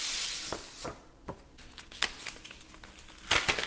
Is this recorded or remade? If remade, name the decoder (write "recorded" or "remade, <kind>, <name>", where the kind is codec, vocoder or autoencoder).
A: recorded